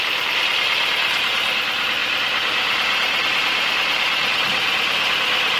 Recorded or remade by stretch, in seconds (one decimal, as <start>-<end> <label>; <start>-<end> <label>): 0.0-2.0 recorded; 2.0-5.6 remade

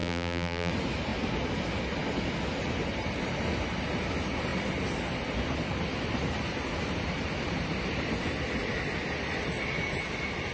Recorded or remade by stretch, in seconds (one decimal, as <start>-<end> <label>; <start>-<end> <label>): 0.0-0.7 remade; 0.7-10.5 recorded

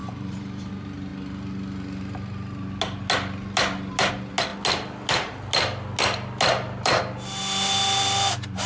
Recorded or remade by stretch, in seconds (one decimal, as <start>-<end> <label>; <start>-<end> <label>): 0.0-0.7 remade; 0.7-8.7 recorded